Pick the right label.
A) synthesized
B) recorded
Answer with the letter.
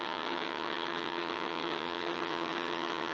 A